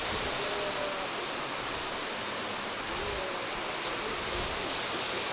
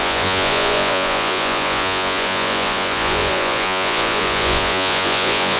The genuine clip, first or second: first